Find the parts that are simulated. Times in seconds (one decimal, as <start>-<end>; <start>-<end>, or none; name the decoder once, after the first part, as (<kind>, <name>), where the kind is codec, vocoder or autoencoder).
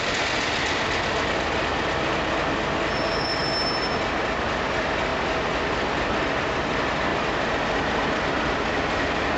none